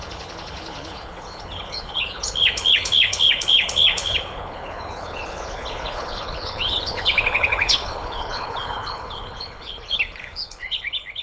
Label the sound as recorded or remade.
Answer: remade